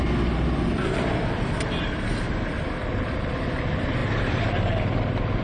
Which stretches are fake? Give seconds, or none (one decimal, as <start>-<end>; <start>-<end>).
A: none